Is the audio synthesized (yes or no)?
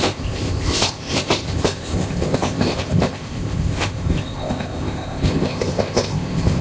yes